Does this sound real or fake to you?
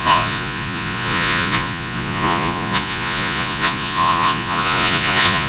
fake